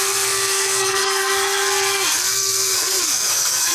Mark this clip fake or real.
fake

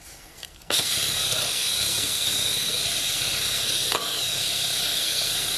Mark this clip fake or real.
fake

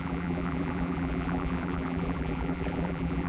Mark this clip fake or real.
fake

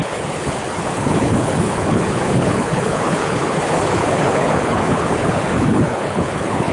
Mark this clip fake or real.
fake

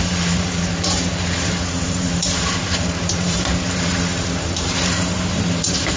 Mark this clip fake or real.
fake